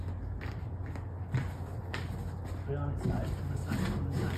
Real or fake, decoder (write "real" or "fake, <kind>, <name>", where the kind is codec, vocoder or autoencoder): real